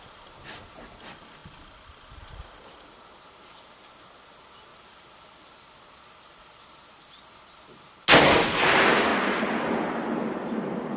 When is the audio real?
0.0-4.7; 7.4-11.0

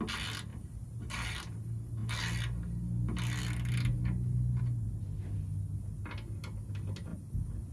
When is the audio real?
0.0-0.5; 1.6-7.7

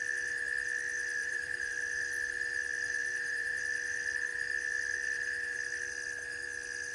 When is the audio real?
0.0-1.2; 1.7-3.0; 3.6-6.9

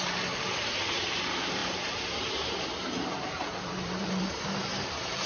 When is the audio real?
none

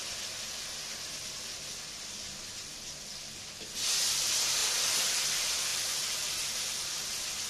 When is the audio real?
0.0-4.6; 5.1-5.7; 7.1-7.5

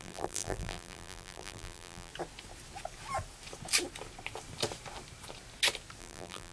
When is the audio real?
2.1-6.0

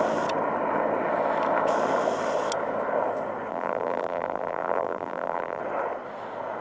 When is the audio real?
0.0-3.5; 5.6-6.6

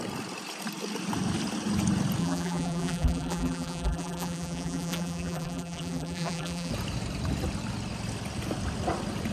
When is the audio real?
0.0-2.2; 6.7-9.3